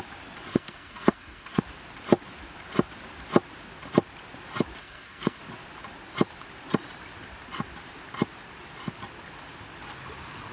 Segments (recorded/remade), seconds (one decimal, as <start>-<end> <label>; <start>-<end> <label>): 0.0-0.5 recorded; 0.5-1.6 remade; 1.6-4.8 recorded; 4.8-5.4 remade; 5.4-10.5 recorded